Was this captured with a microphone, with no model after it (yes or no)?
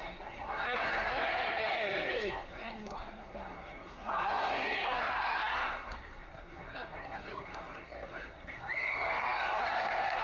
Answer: no